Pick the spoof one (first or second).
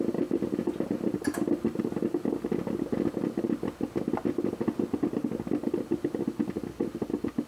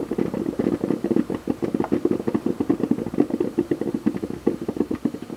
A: second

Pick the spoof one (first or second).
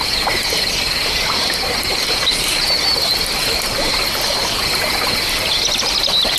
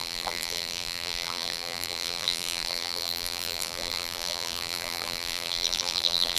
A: second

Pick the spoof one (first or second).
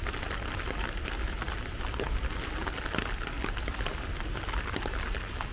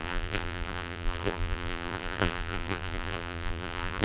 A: second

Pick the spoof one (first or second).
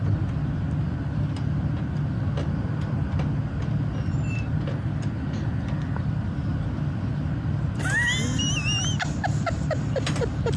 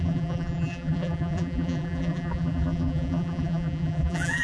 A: second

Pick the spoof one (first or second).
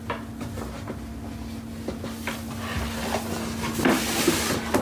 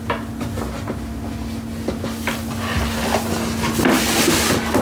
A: first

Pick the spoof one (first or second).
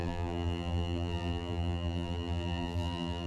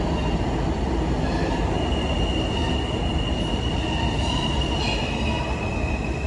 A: first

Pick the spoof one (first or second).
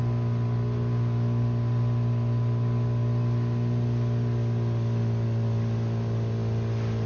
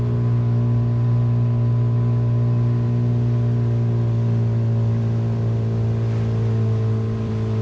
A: second